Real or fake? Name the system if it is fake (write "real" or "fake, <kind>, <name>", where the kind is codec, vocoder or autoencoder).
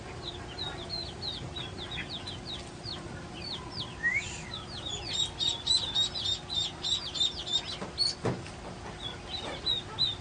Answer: real